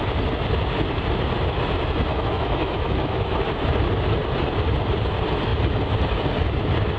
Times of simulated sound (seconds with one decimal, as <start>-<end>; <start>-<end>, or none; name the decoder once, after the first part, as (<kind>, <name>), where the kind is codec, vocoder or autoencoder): 2.1-3.4 (autoencoder, DAC-VAE)